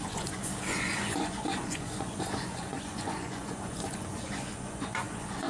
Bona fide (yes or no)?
no